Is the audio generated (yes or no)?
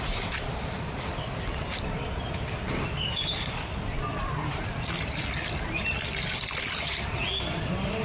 no